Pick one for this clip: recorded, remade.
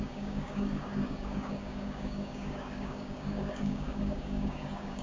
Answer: remade